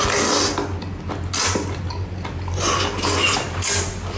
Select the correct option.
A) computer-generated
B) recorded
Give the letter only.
B